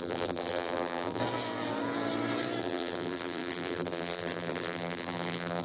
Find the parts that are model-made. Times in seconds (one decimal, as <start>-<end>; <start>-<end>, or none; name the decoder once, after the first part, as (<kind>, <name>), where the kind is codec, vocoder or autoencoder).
0.0-1.2 (vocoder, BigVGAN v2); 2.6-5.6